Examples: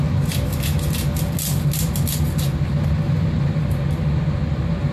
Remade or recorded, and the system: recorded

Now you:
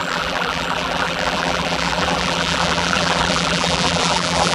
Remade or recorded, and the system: remade, vocoder, BigVGAN v2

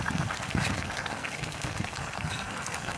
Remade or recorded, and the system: remade, codec, SNAC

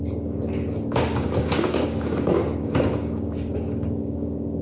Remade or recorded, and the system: remade, codec, DAC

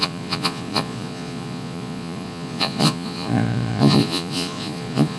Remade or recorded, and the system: remade, vocoder, Vocos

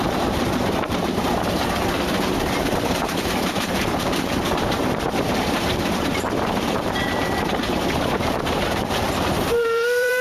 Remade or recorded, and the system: remade, vocoder, BigVGAN v2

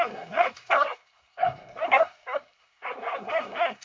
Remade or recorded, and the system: remade, codec, SNAC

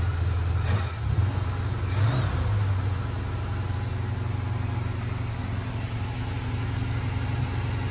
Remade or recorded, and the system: recorded